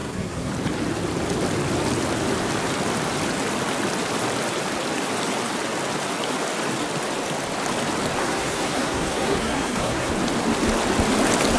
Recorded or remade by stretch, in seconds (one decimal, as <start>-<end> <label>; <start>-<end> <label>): 0.0-0.5 remade; 0.5-8.2 recorded; 8.2-10.1 remade; 10.1-11.6 recorded